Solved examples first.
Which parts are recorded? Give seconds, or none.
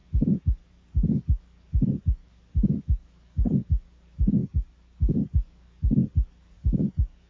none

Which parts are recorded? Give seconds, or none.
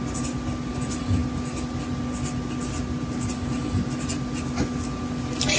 0.0-5.6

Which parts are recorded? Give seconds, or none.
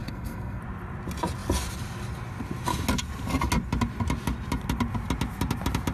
0.6-5.9